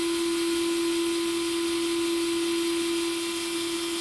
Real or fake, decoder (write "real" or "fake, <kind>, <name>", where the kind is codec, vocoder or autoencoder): real